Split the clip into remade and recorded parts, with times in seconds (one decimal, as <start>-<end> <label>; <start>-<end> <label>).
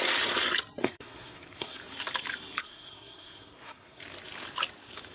0.0-0.8 recorded; 0.8-1.8 remade; 1.8-2.6 recorded; 2.6-4.0 remade; 4.0-5.1 recorded